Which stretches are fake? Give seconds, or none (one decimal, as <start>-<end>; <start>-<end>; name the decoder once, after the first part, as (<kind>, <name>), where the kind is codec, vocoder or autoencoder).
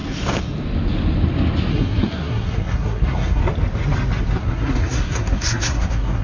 1.7-3.4 (codec, SNAC); 4.4-6.2